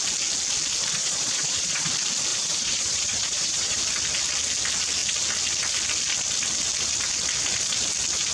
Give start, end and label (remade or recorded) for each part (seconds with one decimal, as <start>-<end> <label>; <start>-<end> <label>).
0.0-1.0 recorded; 1.0-1.9 remade; 1.9-2.3 recorded; 2.3-3.8 remade; 3.8-8.3 recorded